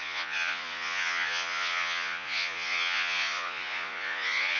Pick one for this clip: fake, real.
fake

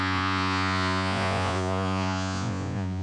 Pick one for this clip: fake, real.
fake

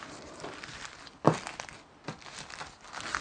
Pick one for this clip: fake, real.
real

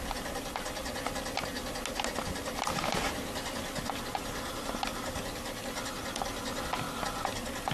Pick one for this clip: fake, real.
real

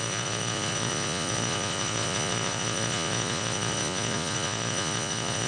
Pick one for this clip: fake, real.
fake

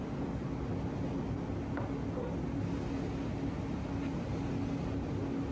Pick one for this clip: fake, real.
real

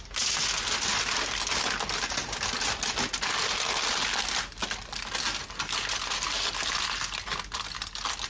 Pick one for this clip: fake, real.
real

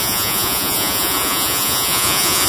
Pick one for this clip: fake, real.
fake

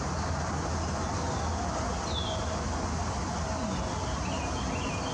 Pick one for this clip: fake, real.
real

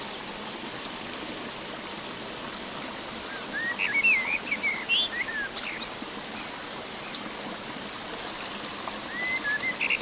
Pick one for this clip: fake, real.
real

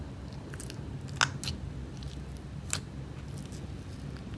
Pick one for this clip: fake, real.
real